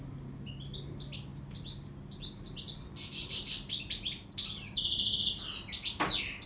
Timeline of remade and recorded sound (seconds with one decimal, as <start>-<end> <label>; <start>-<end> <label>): 0.0-6.5 recorded